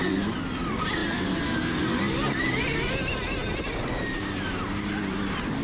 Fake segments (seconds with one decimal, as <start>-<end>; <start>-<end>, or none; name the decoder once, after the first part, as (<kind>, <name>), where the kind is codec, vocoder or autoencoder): none